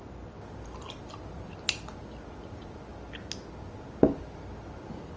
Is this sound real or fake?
real